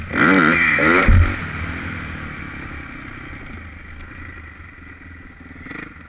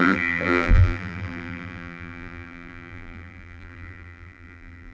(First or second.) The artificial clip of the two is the second